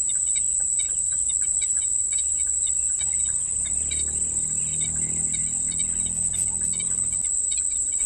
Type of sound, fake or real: real